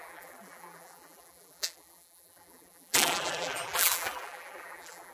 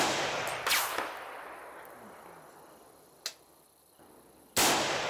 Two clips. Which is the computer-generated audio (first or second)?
first